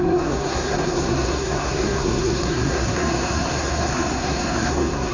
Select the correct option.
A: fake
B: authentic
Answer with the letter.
A